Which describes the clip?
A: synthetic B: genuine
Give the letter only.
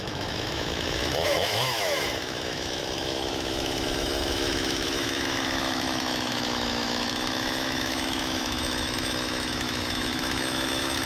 A